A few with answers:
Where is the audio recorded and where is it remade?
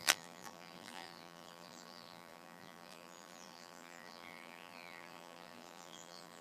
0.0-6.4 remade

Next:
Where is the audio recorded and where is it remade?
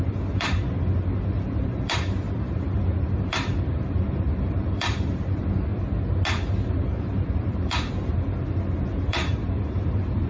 0.0-5.7 remade; 5.7-6.7 recorded; 6.7-10.3 remade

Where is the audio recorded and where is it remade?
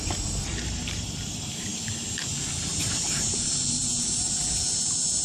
0.0-1.7 remade; 1.7-2.6 recorded; 2.6-5.2 remade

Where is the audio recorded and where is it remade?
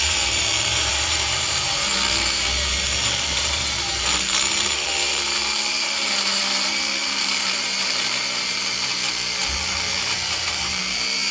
0.0-11.3 remade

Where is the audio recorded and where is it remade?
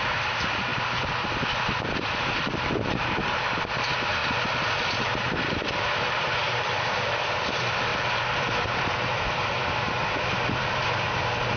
0.0-4.2 remade; 4.2-4.9 recorded; 4.9-11.6 remade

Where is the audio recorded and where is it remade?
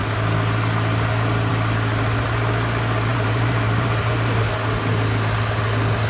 0.0-3.1 recorded; 3.1-4.4 remade; 4.4-6.1 recorded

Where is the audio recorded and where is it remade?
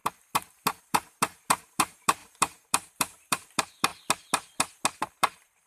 0.0-0.8 recorded; 0.8-3.9 remade; 3.9-5.0 recorded; 5.0-5.7 remade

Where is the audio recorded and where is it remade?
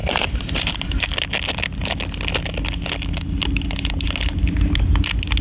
0.0-1.1 remade; 1.1-5.4 recorded